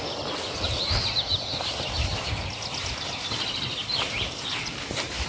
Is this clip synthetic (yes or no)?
no